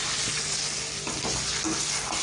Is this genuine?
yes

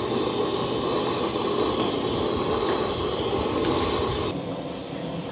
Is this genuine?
yes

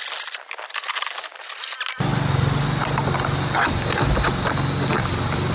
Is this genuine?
yes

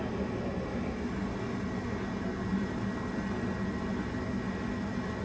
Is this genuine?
yes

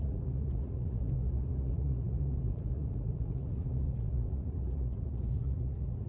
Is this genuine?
no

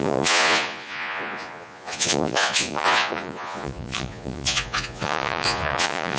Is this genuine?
no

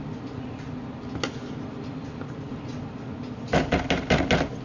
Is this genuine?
yes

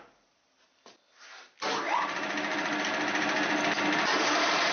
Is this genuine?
yes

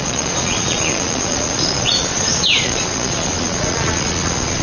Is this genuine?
no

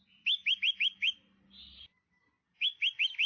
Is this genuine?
yes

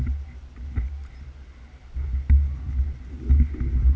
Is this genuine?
yes